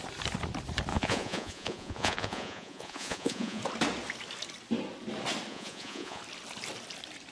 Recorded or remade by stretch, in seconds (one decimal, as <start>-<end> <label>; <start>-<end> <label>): 0.0-0.9 recorded; 0.9-3.6 remade; 3.6-5.5 recorded; 5.5-6.2 remade; 6.2-7.3 recorded